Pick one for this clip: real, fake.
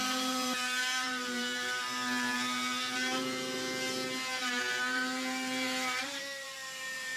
fake